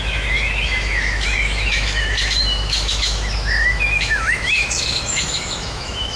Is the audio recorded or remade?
remade